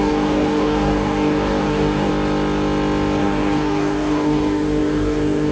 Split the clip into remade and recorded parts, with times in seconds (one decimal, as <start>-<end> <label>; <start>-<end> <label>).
0.0-2.1 remade; 2.1-3.2 recorded; 3.2-5.5 remade